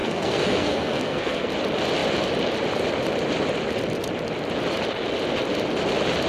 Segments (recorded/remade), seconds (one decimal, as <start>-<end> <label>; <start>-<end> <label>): 0.0-1.5 remade; 1.5-6.3 recorded